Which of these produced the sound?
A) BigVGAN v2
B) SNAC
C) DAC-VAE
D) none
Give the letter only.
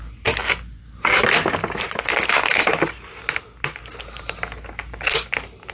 D